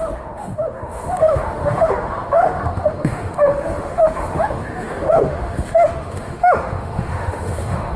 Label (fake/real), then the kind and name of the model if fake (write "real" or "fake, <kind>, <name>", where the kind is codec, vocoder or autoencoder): fake, autoencoder, DAC-VAE